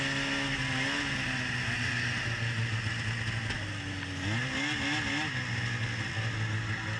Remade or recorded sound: recorded